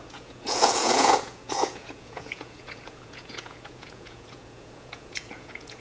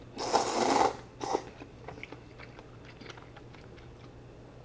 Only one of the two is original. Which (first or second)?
second